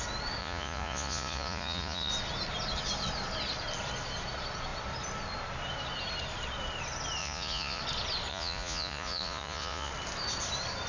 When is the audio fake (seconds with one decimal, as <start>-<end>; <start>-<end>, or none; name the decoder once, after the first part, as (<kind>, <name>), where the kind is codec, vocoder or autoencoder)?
0.4-2.1 (vocoder, Vocos); 7.2-7.8; 8.3-9.9